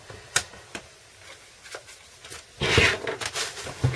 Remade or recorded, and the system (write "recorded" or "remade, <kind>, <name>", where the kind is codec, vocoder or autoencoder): recorded